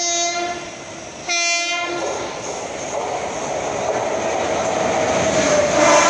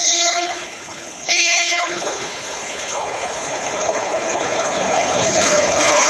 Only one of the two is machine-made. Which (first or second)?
second